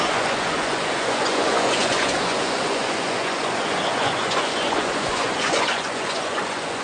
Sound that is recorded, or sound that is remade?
remade